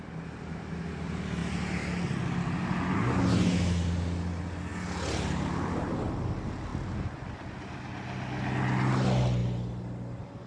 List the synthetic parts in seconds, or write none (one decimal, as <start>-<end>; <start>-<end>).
none